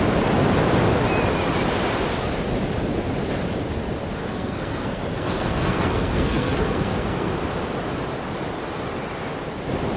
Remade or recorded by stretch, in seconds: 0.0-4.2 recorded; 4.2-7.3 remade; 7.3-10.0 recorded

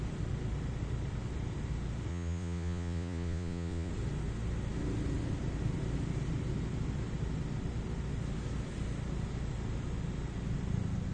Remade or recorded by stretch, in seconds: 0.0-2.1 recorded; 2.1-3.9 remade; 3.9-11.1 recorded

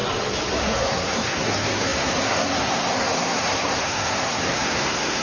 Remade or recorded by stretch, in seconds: 0.0-0.6 recorded; 0.6-5.2 remade

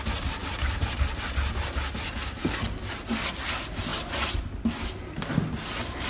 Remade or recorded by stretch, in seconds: 0.0-6.1 recorded